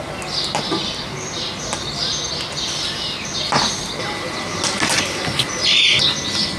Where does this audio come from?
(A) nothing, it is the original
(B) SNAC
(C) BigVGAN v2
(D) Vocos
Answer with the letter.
A